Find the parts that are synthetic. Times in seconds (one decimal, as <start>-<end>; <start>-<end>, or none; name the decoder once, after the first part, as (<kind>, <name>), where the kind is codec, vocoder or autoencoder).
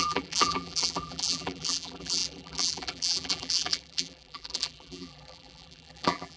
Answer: 0.0-6.4 (vocoder, BigVGAN v2)